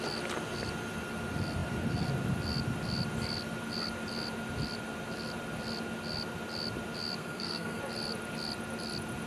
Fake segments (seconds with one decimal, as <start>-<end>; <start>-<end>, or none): 7.2-7.8